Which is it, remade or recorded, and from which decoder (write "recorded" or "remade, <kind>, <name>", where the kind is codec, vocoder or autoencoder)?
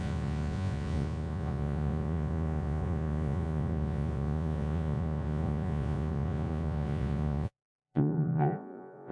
remade, vocoder, Vocos